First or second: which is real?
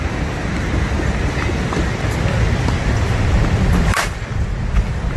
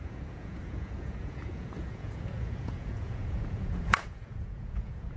first